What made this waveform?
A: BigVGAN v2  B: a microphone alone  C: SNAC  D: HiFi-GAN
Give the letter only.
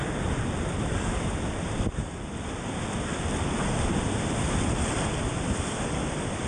B